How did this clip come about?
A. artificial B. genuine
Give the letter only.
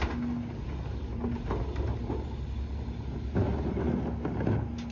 B